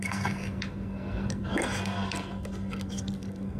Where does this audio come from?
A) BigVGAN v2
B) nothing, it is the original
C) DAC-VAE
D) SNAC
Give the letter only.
D